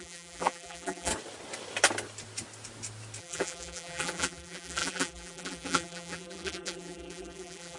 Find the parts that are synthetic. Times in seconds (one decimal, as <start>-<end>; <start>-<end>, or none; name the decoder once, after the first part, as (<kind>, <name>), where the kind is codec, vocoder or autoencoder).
0.0-1.1 (vocoder, BigVGAN v2); 3.2-7.8